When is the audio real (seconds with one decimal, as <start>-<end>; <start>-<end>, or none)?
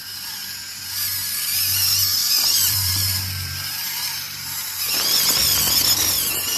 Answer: 0.0-2.2; 4.8-6.6